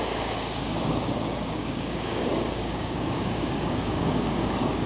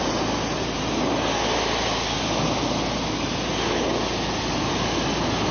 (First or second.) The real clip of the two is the second